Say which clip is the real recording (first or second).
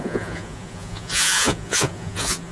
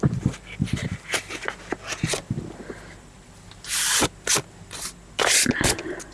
second